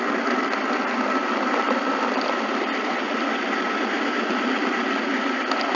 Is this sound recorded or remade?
remade